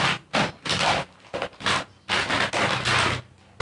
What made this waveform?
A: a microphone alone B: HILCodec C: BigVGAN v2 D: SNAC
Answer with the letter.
A